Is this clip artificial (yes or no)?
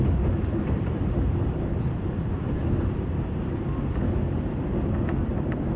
no